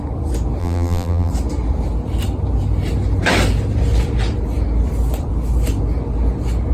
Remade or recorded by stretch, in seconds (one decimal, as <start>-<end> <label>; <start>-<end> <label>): 0.0-0.6 recorded; 0.6-1.3 remade; 1.3-6.7 recorded

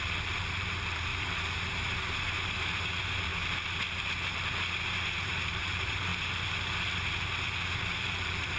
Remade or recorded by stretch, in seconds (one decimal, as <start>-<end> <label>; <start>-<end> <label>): 0.0-3.3 remade; 3.3-5.2 recorded; 5.2-6.1 remade; 6.1-7.8 recorded; 7.8-8.6 remade

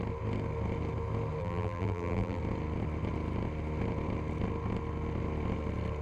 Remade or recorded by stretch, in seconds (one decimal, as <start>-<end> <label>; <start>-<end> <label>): 0.0-1.4 recorded; 1.4-2.4 remade; 2.4-6.0 recorded

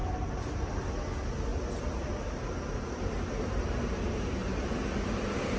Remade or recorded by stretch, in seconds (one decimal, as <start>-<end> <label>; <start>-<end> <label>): 0.0-1.5 recorded; 1.5-3.9 remade; 3.9-4.4 recorded; 4.4-5.6 remade

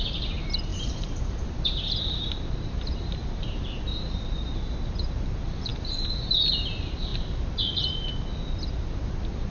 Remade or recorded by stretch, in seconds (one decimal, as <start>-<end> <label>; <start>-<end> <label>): 0.0-0.7 recorded; 0.7-4.2 remade; 4.2-9.5 recorded

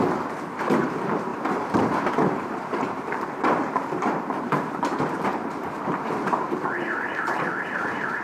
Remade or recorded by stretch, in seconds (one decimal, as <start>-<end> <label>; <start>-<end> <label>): 0.0-1.3 remade; 1.3-2.1 recorded; 2.1-8.2 remade